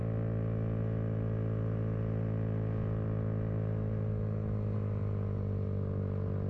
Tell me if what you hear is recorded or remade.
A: recorded